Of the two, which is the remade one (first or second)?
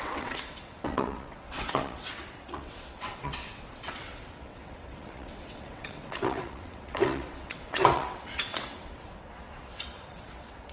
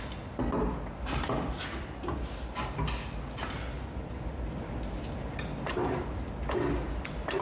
first